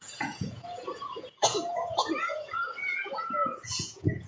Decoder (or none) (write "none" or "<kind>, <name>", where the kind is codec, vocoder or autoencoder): vocoder, Vocos